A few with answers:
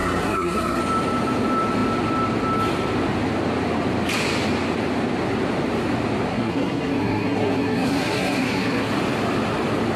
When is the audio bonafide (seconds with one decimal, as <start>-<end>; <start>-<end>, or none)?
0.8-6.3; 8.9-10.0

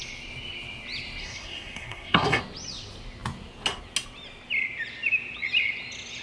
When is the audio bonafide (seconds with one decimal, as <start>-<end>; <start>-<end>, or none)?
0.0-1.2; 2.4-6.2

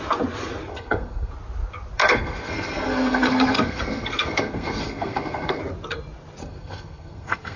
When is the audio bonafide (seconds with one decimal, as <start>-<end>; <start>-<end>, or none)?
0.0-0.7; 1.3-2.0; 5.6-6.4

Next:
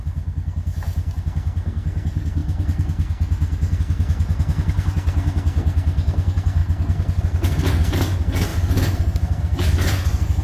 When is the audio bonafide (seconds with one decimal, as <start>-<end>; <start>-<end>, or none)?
none

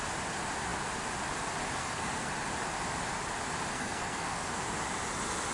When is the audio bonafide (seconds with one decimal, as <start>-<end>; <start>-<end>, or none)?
0.0-1.8; 2.3-3.7; 4.6-5.5

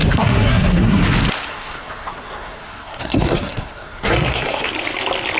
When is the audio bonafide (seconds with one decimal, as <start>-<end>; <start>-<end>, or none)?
1.0-1.5; 4.7-5.4

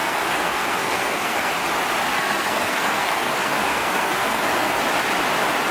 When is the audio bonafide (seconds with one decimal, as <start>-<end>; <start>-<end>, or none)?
1.5-2.1; 4.8-5.7

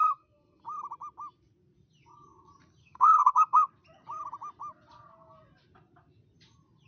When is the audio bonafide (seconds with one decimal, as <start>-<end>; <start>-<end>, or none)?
0.6-2.8; 3.7-6.9